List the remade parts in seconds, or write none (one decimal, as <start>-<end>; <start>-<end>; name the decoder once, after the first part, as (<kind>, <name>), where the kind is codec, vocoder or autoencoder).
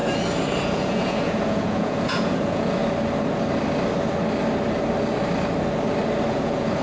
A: 0.6-2.8 (vocoder, Vocos); 6.3-6.8